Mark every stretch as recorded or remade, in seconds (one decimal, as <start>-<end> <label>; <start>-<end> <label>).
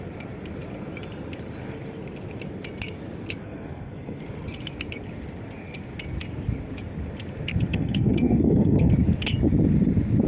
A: 0.0-3.4 recorded; 3.4-4.2 remade; 4.2-7.7 recorded; 7.7-8.9 remade; 8.9-10.3 recorded